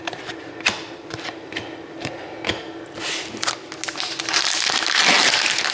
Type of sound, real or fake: real